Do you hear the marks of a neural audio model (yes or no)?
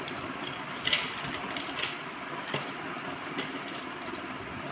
no